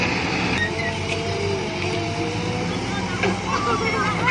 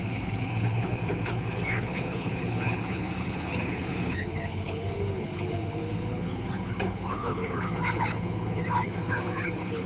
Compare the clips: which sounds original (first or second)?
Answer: first